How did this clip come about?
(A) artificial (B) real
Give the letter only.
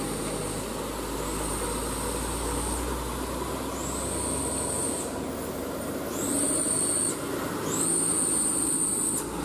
B